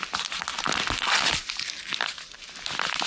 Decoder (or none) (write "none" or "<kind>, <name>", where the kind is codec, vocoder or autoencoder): none